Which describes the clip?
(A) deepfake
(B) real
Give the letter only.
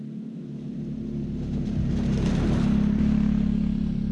B